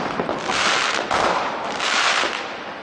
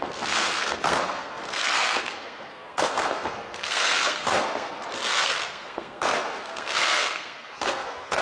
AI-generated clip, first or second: second